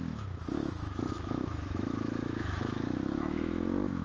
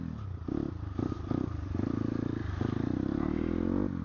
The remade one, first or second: first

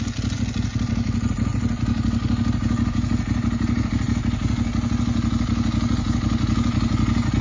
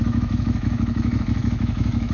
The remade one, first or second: second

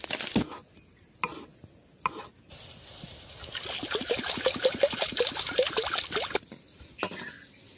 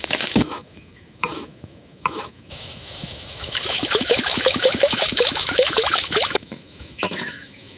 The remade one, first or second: second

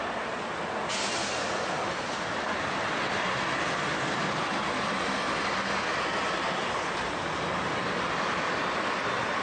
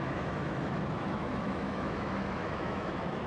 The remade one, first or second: second